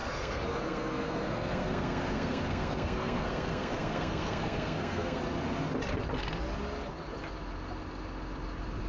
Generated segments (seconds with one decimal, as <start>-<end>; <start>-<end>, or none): 0.0-5.2